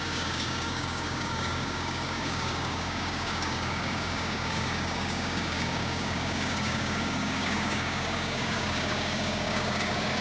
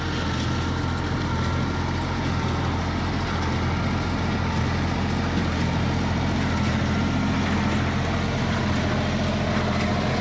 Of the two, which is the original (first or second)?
second